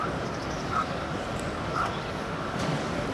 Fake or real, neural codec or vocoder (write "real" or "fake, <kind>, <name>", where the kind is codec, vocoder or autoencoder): fake, codec, DAC